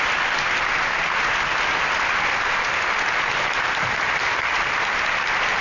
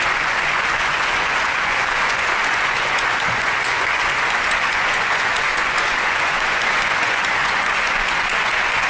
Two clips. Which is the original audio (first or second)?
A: first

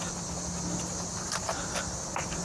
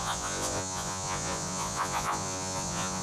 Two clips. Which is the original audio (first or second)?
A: first